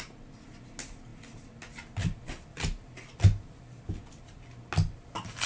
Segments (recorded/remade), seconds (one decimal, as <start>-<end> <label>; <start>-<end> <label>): 0.0-5.5 recorded